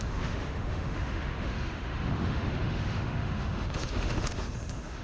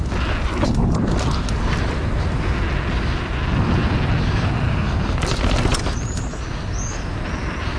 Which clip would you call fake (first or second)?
first